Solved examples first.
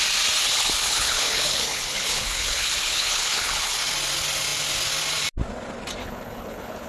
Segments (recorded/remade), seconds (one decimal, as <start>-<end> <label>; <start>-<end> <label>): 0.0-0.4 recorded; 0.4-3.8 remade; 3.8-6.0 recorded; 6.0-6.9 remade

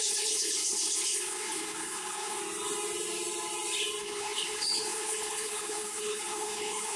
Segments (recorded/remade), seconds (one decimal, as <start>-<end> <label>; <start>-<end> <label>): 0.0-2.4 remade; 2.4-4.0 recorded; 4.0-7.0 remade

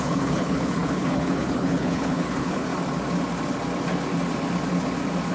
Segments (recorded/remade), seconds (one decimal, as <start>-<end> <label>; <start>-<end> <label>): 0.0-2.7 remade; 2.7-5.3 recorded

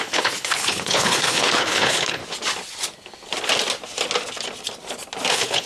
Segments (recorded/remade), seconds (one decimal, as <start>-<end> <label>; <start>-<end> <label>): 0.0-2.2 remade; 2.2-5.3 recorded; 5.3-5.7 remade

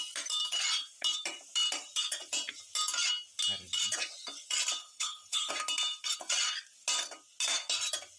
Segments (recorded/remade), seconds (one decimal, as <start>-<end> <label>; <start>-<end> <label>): 0.0-4.8 recorded; 4.8-5.5 remade; 5.5-8.2 recorded

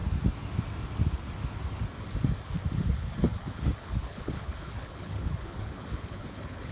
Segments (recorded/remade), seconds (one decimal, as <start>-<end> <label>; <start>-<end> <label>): 0.0-2.8 recorded; 2.8-6.7 remade